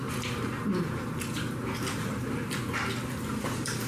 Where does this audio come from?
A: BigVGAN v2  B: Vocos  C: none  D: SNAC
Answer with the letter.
A